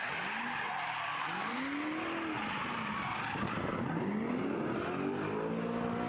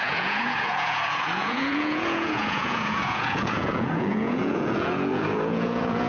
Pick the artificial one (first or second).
second